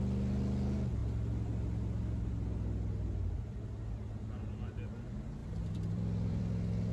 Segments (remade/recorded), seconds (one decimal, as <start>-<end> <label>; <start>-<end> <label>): 0.0-5.4 recorded; 5.4-6.4 remade; 6.4-6.9 recorded